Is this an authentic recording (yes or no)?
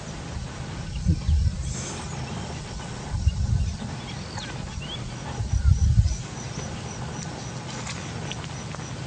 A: yes